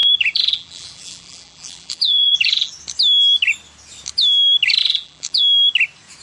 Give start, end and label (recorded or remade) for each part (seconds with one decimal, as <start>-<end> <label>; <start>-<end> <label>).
0.0-2.7 remade; 2.7-4.8 recorded; 4.8-5.4 remade; 5.4-6.2 recorded